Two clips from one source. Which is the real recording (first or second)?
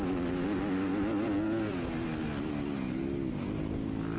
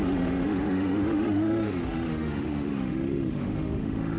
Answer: first